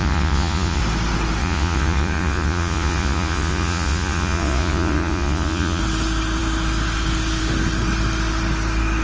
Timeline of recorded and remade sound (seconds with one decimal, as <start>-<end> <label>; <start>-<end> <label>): 0.0-0.8 remade; 0.8-1.4 recorded; 1.4-5.8 remade; 5.8-9.0 recorded